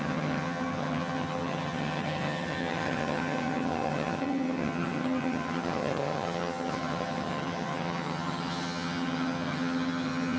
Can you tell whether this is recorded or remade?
remade